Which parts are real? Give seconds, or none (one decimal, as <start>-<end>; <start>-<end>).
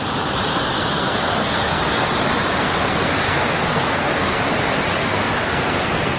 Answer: 0.0-0.5; 2.1-2.5; 4.4-5.0